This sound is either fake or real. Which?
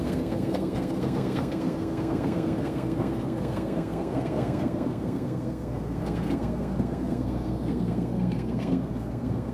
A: fake